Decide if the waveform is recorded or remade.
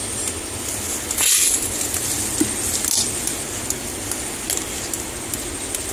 recorded